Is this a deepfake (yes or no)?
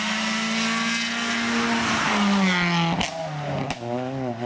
no